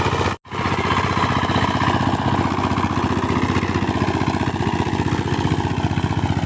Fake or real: real